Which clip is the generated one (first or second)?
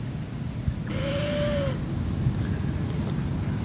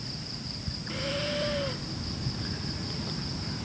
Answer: second